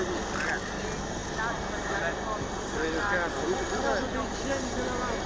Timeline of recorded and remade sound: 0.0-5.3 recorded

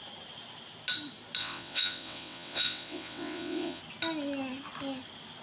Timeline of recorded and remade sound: 0.0-1.4 recorded; 1.4-3.8 remade; 3.8-5.4 recorded

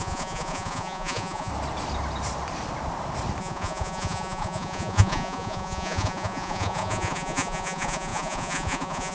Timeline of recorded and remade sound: 0.0-1.5 remade; 1.5-3.4 recorded; 3.4-9.1 remade